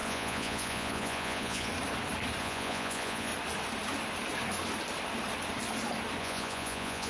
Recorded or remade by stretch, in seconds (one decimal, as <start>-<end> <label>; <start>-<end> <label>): 0.0-1.7 remade; 1.7-2.4 recorded; 2.4-3.3 remade; 3.3-6.2 recorded; 6.2-7.1 remade